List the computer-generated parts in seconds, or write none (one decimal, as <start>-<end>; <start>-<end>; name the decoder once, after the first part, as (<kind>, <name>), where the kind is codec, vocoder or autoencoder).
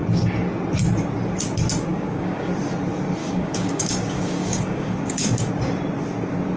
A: 1.9-2.5 (codec, DAC); 3.2-5.5